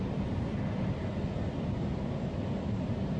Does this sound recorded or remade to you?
recorded